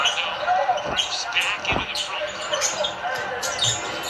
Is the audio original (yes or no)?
yes